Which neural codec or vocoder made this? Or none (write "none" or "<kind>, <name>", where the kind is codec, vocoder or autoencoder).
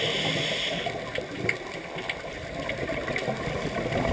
none